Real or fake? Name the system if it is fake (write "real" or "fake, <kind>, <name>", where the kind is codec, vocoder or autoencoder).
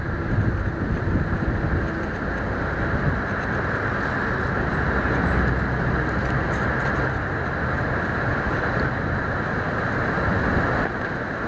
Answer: real